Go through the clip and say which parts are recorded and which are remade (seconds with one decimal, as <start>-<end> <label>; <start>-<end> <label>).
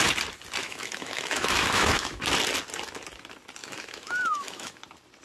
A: 0.0-0.6 recorded; 0.6-2.2 remade; 2.2-3.6 recorded; 3.6-4.8 remade; 4.8-5.2 recorded